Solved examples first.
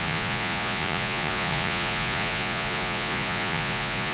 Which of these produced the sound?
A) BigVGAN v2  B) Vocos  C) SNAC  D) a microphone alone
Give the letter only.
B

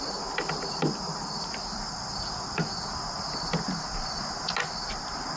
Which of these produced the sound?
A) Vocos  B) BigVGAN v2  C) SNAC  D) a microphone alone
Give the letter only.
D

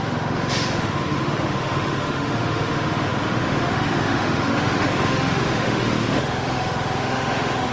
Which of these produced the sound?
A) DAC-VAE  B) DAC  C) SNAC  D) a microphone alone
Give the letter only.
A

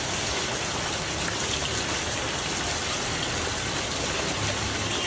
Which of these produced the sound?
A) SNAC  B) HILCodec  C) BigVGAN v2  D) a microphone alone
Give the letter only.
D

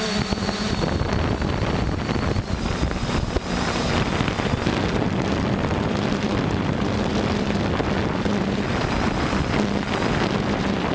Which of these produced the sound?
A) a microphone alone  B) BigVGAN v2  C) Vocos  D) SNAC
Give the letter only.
B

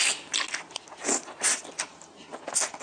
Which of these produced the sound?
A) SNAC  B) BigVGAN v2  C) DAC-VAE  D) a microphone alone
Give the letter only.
D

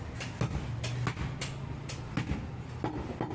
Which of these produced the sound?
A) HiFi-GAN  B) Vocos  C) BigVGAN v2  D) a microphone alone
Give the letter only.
D